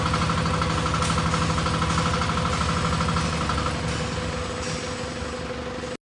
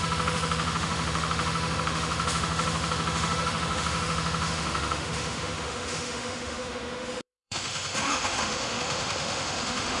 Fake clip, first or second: second